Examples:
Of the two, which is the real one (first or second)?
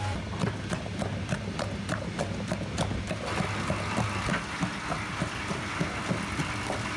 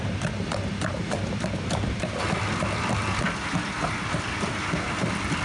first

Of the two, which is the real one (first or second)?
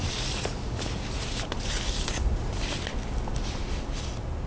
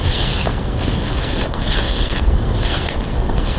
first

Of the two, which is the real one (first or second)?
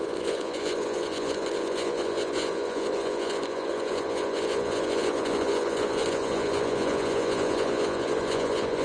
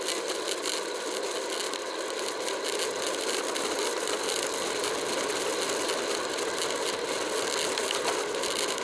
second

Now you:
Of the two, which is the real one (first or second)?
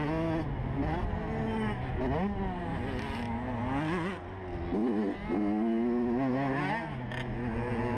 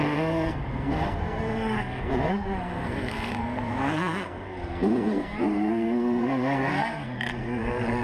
first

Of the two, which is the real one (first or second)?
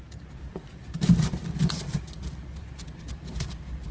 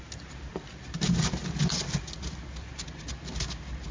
second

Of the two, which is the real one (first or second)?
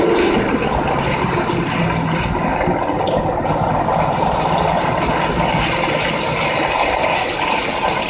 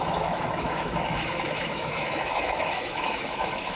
first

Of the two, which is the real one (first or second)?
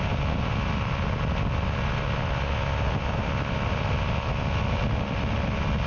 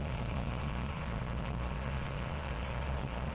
first